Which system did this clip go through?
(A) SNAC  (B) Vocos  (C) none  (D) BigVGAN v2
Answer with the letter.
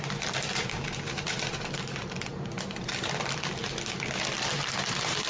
D